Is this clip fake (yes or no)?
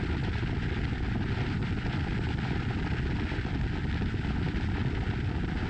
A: no